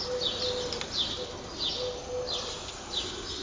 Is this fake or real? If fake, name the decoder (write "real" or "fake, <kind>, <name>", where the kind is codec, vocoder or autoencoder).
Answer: real